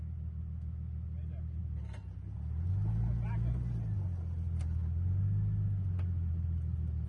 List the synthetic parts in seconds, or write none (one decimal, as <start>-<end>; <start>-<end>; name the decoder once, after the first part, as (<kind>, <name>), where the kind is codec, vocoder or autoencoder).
none